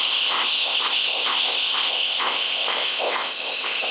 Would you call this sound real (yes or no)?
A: no